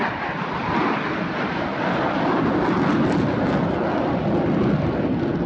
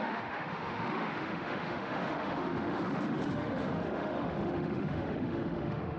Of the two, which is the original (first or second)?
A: first